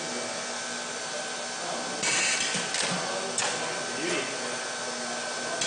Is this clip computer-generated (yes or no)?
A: no